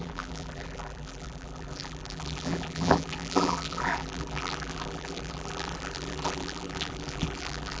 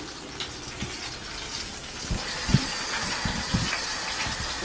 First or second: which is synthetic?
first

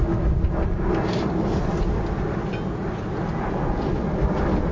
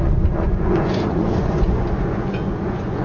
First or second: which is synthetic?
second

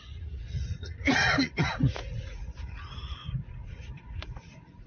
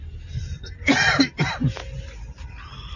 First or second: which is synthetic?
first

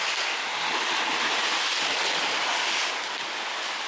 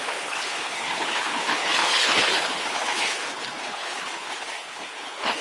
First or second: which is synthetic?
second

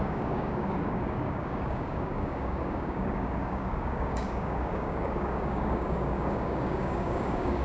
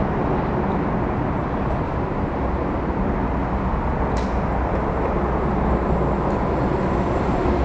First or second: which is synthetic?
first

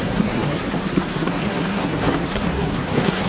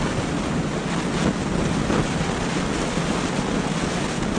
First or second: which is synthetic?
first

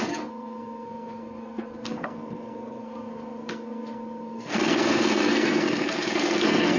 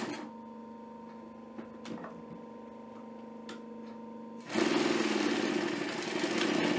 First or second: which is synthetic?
first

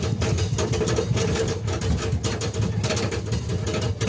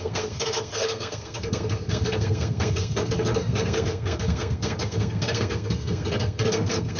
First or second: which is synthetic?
second